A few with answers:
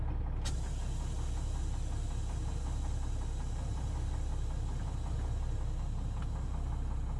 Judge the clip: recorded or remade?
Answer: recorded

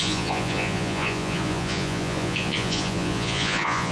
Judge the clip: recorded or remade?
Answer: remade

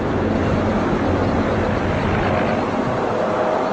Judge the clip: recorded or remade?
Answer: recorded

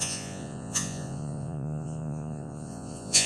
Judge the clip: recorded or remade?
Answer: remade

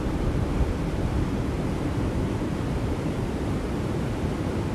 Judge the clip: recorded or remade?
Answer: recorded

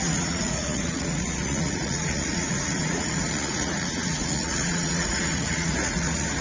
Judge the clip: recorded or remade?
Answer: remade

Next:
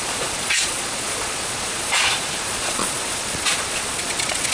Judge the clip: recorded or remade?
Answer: remade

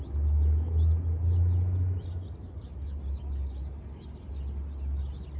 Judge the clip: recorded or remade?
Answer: recorded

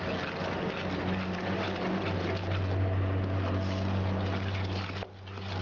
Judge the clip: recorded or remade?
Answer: recorded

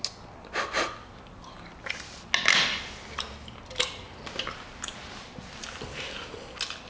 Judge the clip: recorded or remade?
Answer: recorded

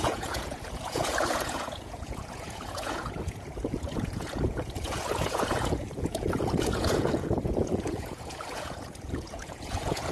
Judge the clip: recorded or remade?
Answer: remade